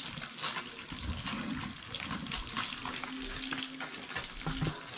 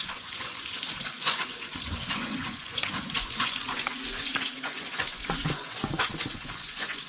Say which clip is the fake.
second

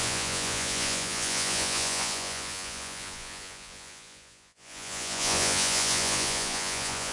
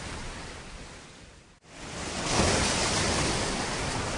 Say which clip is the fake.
first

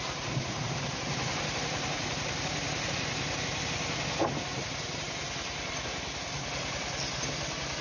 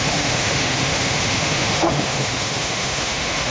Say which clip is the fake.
second